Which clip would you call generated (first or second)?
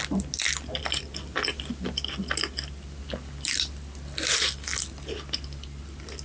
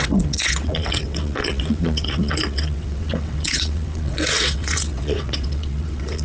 second